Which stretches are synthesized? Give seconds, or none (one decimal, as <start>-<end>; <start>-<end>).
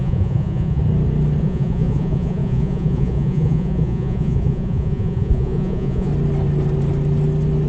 0.0-0.8; 1.4-6.1